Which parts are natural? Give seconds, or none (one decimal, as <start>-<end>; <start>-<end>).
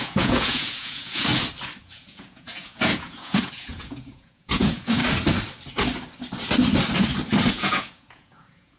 1.3-1.8; 5.0-7.5